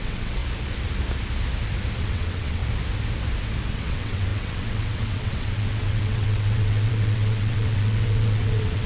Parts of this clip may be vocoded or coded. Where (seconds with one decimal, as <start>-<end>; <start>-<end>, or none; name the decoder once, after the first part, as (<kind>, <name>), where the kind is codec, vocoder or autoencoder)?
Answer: 0.0-0.4 (vocoder, WaveNeXt); 2.0-2.6; 3.7-8.9